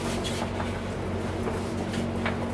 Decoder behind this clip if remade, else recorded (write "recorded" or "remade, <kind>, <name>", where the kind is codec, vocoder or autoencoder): recorded